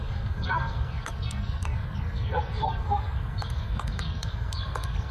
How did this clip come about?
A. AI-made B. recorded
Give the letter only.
A